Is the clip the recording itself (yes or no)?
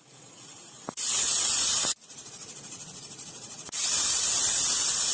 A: no